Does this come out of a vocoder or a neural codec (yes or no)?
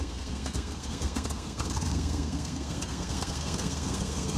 yes